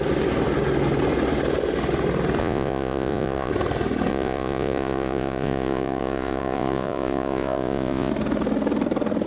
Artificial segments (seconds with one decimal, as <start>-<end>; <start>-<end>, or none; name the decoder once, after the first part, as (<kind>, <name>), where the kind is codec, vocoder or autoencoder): 2.4-3.5 (vocoder, Vocos); 4.1-8.1